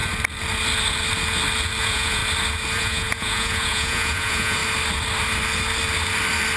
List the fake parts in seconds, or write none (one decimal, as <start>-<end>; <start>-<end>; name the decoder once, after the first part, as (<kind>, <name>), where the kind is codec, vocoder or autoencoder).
1.8-2.2 (vocoder, Vocos); 2.8-4.6